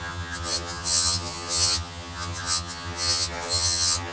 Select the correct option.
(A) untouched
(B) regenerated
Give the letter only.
B